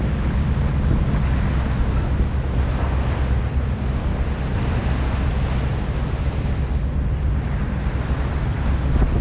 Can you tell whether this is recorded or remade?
recorded